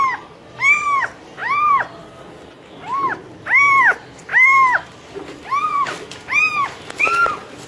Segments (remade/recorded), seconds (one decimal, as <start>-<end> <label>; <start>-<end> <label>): 0.0-7.7 recorded